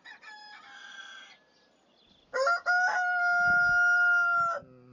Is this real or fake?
real